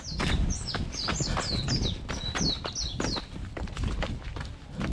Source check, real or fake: real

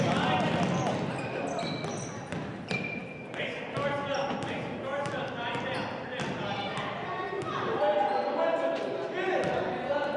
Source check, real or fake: real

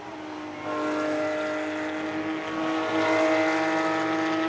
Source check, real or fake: real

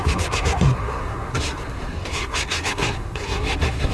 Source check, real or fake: fake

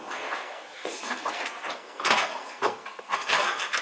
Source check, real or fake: fake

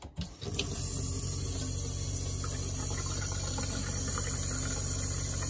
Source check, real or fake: real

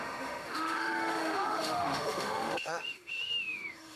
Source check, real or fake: fake